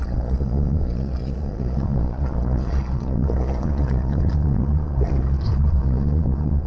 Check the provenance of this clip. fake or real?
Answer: fake